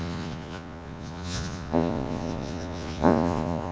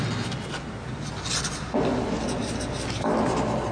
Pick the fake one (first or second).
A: first